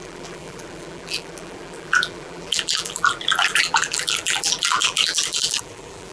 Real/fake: fake